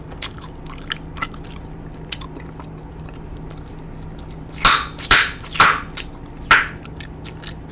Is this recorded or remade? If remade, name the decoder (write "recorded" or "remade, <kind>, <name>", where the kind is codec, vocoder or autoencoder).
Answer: recorded